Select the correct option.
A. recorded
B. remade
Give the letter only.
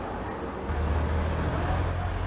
A